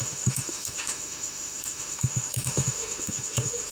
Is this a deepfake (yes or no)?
yes